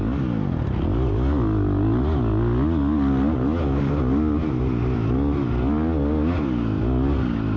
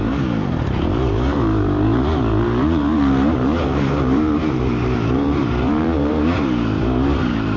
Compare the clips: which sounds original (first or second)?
first